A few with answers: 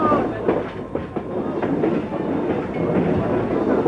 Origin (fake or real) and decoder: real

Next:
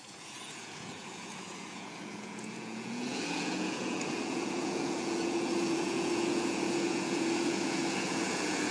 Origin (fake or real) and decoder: fake, vocoder, Vocos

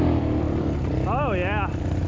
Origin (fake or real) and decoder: real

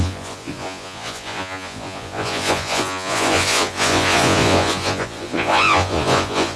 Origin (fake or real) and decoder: fake, vocoder, Vocos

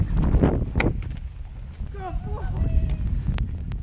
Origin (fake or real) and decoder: real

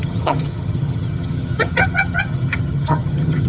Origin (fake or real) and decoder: fake, vocoder, HiFi-GAN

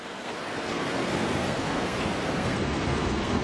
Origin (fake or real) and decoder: fake, codec, SNAC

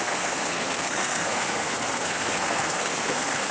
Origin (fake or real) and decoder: fake, codec, SNAC